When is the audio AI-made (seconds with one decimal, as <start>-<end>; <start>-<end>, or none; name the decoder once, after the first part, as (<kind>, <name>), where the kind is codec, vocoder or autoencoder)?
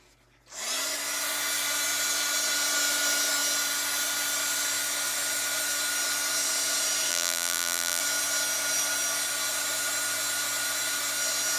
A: 7.1-8.0 (vocoder, BigVGAN v2)